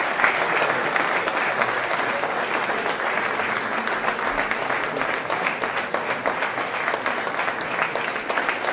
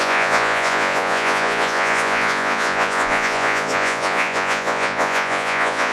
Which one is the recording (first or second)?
first